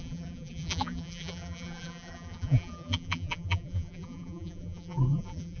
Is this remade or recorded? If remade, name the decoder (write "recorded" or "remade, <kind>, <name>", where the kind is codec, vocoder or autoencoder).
remade, vocoder, BigVGAN v2